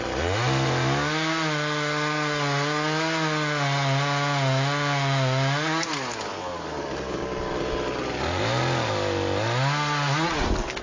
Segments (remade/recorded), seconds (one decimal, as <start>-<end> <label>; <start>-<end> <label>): 0.0-10.8 recorded